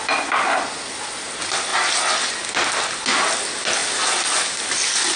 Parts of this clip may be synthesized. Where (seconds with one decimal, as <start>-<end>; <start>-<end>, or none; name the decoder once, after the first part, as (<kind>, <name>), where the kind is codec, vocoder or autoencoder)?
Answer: none